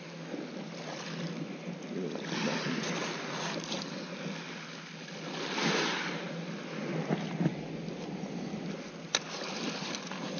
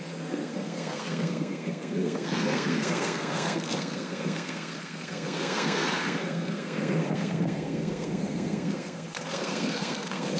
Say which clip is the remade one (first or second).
second